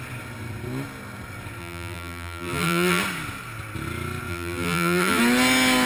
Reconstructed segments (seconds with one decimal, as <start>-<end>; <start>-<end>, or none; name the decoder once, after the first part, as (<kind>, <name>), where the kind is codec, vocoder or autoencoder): 1.6-3.0 (vocoder, BigVGAN v2); 4.3-5.2